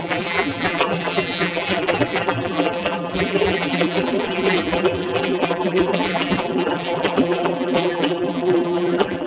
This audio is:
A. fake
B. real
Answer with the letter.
A